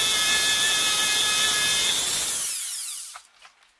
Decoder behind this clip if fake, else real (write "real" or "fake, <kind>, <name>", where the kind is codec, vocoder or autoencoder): real